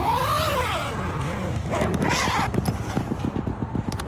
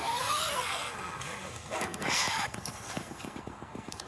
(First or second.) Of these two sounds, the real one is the first